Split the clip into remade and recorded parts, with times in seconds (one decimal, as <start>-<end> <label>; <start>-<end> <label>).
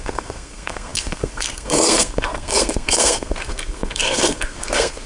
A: 0.0-5.1 remade